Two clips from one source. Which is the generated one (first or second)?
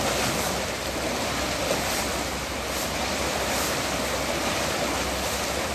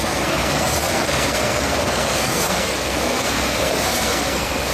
second